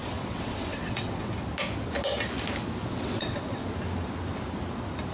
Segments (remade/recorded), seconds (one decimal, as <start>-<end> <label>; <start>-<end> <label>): 0.0-1.3 remade; 1.3-2.9 recorded; 2.9-3.6 remade; 3.6-5.1 recorded